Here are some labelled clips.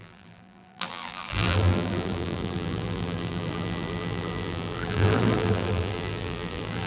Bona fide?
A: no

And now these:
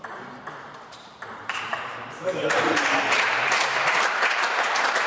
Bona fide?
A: no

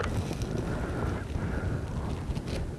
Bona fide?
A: yes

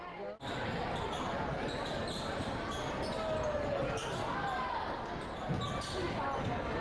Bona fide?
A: yes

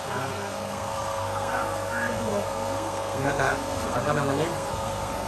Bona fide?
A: no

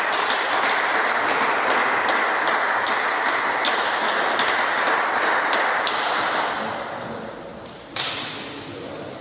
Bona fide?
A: yes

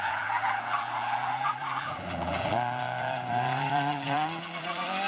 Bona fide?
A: no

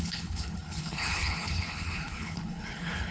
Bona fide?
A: no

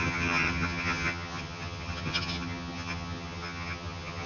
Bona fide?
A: no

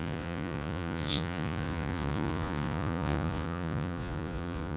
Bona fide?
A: no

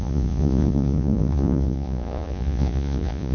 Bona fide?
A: no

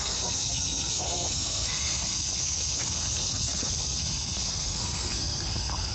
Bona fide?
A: no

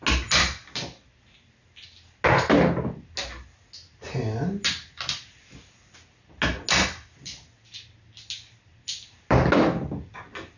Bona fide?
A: yes